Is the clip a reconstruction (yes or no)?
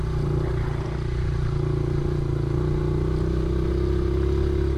no